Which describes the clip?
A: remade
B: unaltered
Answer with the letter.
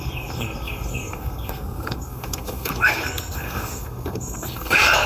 A